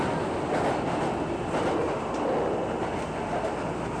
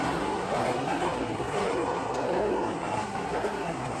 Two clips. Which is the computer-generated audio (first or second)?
second